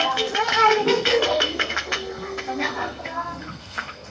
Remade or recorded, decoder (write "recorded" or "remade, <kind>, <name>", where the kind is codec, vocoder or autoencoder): remade, codec, SNAC